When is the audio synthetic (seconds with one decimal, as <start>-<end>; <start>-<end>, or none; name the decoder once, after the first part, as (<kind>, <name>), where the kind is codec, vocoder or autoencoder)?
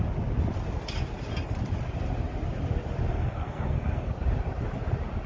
3.1-4.1 (codec, SNAC)